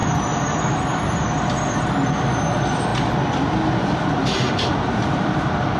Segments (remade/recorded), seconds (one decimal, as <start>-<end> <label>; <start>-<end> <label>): 0.0-5.8 recorded